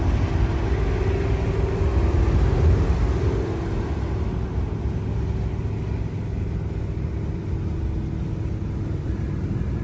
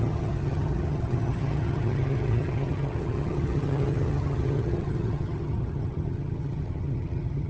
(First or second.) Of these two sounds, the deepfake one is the second